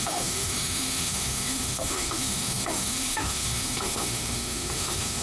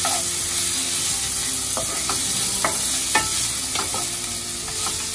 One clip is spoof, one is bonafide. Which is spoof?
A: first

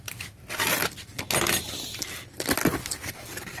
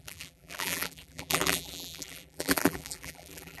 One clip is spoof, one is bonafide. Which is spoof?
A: second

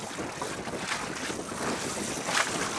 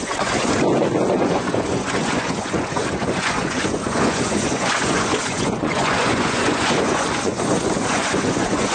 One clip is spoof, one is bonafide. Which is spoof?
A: second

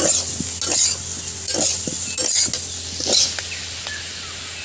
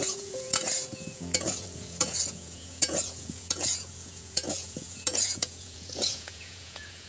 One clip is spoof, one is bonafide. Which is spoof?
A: second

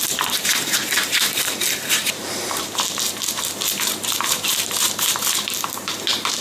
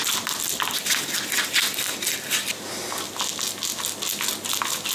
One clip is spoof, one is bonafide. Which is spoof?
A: first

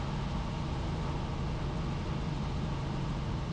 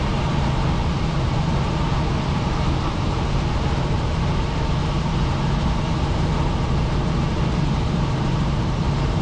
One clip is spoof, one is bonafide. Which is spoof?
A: second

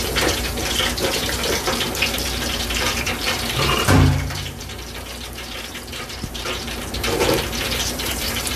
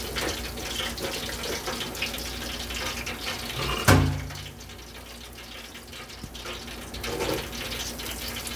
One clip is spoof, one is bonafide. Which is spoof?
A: first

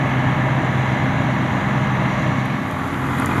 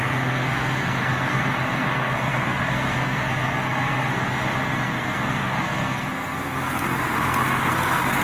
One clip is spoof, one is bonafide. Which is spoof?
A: second